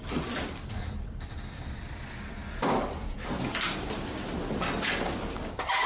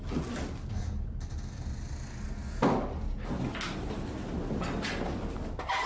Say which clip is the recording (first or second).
second